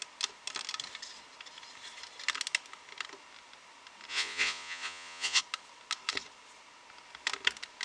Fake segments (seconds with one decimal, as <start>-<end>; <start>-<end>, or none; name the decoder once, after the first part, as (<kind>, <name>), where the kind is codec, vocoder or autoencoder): 4.1-5.4 (vocoder, Vocos)